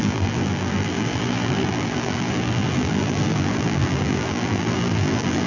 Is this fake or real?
fake